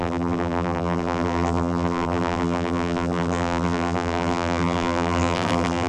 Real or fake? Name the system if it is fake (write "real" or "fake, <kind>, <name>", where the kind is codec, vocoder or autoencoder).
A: fake, vocoder, BigVGAN v2